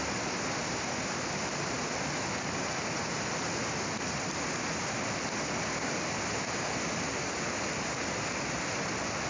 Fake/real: real